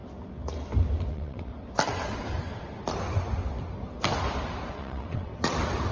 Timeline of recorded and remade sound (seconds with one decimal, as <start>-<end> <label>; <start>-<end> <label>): 0.0-1.1 recorded; 1.1-1.5 remade; 1.5-4.7 recorded; 4.7-5.3 remade; 5.3-5.9 recorded